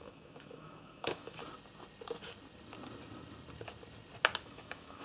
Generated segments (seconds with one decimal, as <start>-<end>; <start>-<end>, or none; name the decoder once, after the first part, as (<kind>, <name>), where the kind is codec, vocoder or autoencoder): 0.0-1.4 (autoencoder, DAC-VAE); 4.4-5.0